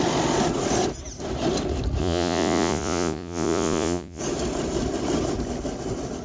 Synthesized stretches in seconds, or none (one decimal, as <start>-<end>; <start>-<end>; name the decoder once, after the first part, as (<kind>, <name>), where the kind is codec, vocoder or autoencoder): 2.0-4.2 (vocoder, Vocos)

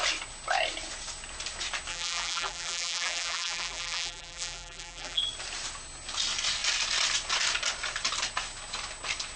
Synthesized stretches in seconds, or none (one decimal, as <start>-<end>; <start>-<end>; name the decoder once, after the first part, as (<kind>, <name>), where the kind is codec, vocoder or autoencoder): 1.9-5.2 (vocoder, BigVGAN v2)

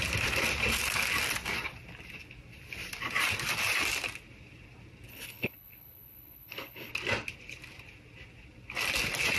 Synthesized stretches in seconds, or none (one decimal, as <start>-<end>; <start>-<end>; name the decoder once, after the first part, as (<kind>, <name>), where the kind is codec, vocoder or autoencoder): 5.1-6.9 (codec, HILCodec)

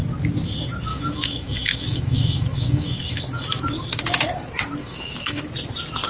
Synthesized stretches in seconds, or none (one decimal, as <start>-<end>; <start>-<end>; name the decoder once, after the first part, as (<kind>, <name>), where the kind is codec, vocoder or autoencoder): 0.9-3.2 (autoencoder, DAC-VAE); 4.8-5.4